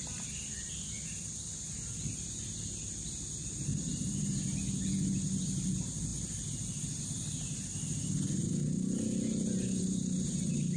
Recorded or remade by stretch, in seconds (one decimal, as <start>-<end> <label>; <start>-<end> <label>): 0.0-10.8 recorded